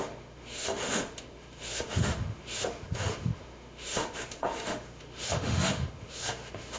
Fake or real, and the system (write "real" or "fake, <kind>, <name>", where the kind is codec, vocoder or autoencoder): fake, autoencoder, DAC-VAE